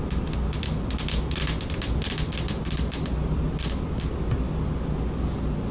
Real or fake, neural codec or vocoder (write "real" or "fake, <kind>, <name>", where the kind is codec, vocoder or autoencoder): real